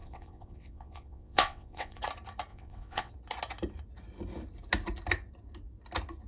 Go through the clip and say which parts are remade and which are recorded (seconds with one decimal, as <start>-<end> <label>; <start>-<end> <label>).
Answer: 0.0-2.0 remade; 2.0-2.5 recorded; 2.5-3.1 remade; 3.1-6.3 recorded